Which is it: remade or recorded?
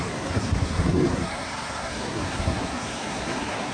remade